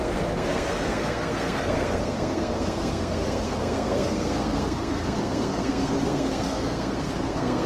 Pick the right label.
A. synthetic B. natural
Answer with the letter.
A